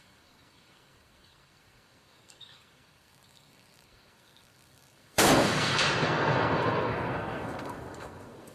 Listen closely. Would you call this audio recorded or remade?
remade